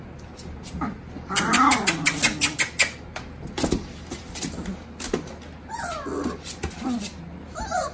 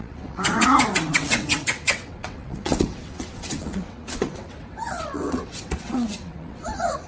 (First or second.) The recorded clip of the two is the first